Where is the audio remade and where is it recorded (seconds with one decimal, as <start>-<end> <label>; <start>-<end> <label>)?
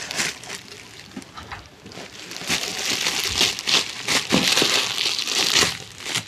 0.0-6.3 recorded